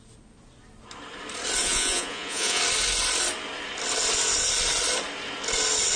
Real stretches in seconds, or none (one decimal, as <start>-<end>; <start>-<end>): 0.0-1.6; 2.6-6.0